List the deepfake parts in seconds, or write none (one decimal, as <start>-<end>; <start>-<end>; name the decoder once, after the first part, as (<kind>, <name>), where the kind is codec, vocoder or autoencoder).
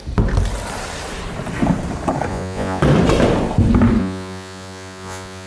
2.3-2.8 (vocoder, Vocos); 4.0-5.5